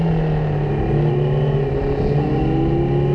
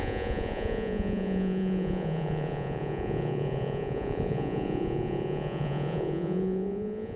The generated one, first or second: second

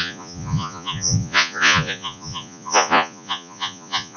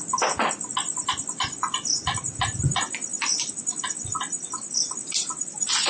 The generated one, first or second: first